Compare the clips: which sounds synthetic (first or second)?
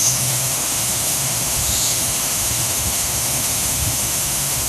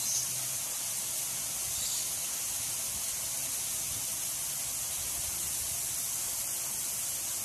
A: first